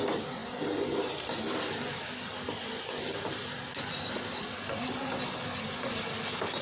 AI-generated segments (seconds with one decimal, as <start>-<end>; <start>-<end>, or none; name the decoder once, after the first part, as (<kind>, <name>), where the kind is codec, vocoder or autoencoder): none